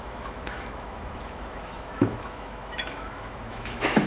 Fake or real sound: fake